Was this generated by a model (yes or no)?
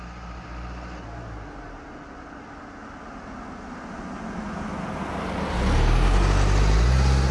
no